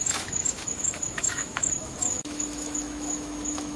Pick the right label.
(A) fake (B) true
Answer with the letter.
A